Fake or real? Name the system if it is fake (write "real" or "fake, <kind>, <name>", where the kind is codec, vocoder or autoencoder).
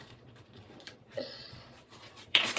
fake, vocoder, Vocos